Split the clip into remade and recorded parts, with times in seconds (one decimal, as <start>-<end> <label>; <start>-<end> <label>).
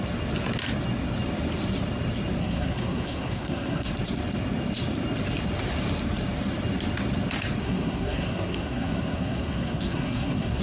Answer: 0.0-2.4 recorded; 2.4-3.9 remade; 3.9-7.6 recorded; 7.6-10.6 remade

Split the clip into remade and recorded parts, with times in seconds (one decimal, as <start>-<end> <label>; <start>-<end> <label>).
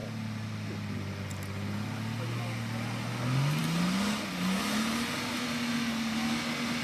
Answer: 0.0-6.8 recorded